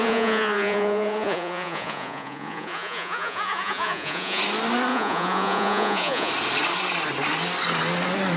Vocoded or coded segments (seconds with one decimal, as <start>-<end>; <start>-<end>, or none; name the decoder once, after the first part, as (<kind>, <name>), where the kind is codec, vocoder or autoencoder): 0.0-4.4 (vocoder, Vocos); 4.9-6.3